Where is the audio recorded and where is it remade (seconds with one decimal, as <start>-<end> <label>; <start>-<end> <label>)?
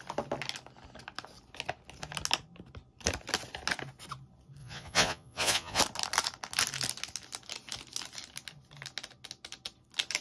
0.0-4.6 recorded; 4.6-5.8 remade; 5.8-10.2 recorded